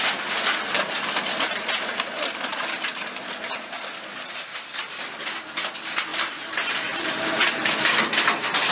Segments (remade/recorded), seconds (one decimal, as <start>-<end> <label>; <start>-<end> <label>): 0.0-2.5 recorded; 2.5-3.8 remade; 3.8-6.1 recorded; 6.1-8.1 remade; 8.1-8.7 recorded